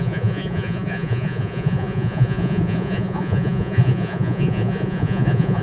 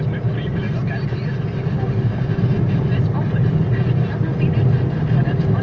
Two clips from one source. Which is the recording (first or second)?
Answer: second